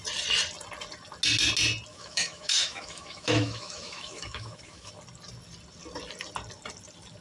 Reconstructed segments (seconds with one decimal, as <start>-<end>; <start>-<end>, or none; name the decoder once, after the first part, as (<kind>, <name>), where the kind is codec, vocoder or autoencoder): 1.9-4.9 (autoencoder, DAC-VAE)